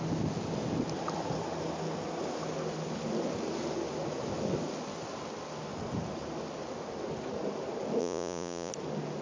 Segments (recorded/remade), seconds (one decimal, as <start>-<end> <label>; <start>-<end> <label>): 0.0-8.0 recorded; 8.0-8.7 remade; 8.7-9.2 recorded